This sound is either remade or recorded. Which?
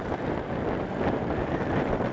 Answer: recorded